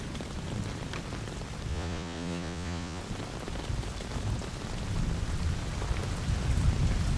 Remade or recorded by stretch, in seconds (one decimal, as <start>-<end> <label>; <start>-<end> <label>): 0.0-1.7 recorded; 1.7-3.0 remade; 3.0-7.2 recorded